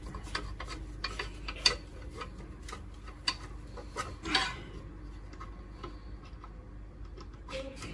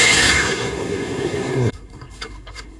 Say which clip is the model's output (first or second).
second